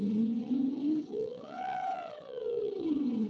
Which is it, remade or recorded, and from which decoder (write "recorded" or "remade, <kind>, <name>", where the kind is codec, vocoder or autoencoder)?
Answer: remade, vocoder, WaveNeXt